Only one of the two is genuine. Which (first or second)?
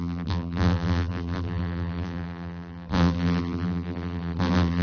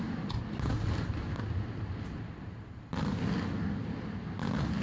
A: second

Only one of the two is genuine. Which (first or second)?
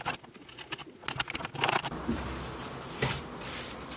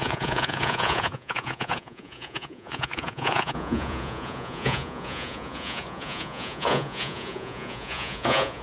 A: first